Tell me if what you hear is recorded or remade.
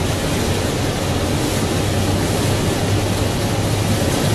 recorded